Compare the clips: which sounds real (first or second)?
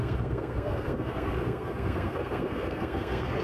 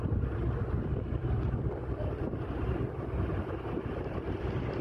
second